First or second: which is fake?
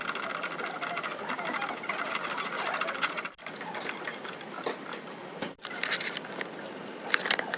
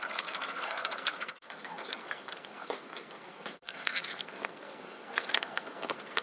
second